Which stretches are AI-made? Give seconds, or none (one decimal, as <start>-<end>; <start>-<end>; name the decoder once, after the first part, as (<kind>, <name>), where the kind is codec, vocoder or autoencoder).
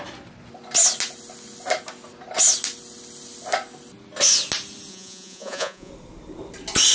4.9-5.9 (vocoder, Vocos)